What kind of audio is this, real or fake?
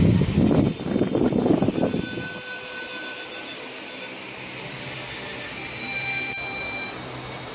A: real